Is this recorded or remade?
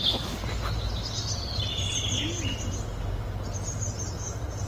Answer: recorded